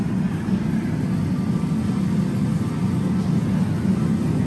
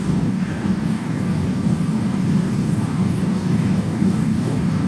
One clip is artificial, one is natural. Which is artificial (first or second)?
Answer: second